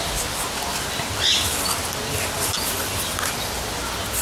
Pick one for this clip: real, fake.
real